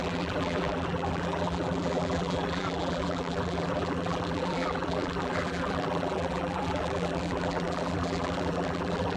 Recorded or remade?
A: remade